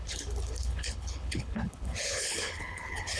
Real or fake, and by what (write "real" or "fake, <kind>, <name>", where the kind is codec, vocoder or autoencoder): fake, codec, HILCodec